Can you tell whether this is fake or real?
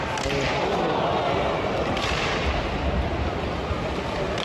real